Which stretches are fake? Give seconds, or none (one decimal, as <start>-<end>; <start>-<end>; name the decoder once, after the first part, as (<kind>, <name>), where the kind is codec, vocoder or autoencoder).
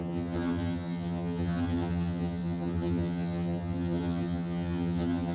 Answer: 0.0-5.3 (vocoder, HiFi-GAN)